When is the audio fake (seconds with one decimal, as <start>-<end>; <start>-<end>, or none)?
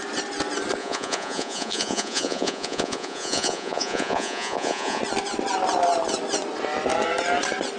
0.8-5.0